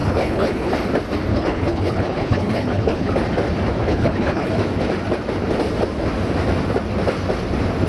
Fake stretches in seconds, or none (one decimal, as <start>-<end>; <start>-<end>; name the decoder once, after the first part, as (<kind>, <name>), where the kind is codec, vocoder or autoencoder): 0.0-0.7 (codec, HILCodec); 1.3-3.1; 3.9-4.5